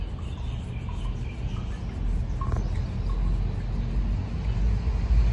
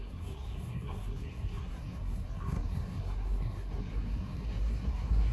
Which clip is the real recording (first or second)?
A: first